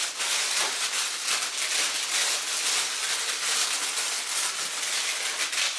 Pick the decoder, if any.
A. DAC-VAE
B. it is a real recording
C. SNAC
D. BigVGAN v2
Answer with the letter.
B